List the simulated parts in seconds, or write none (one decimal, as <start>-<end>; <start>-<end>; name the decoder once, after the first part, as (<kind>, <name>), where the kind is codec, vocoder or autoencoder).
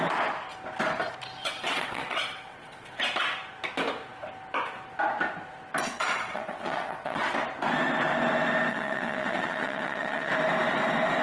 1.4-3.0 (vocoder, WaveNeXt); 5.8-7.3; 8.7-10.3